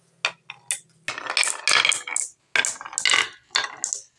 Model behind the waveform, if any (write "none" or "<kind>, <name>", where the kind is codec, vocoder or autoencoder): none